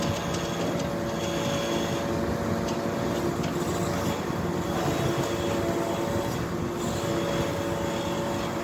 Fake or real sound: real